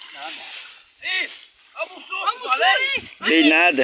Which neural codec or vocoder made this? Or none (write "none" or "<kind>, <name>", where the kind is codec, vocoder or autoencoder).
none